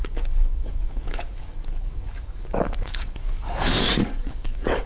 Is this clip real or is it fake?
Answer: fake